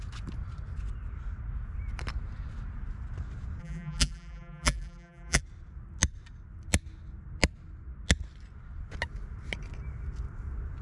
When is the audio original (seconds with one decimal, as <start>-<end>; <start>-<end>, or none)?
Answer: 0.0-3.6; 5.4-10.8

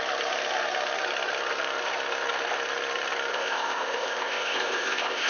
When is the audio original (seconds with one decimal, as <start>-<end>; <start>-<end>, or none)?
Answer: 0.0-3.3